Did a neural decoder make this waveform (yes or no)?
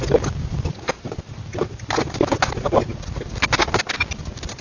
no